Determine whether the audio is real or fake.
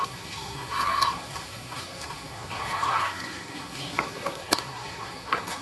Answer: fake